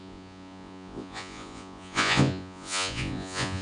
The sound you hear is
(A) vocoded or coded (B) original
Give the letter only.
A